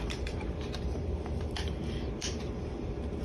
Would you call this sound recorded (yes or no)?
no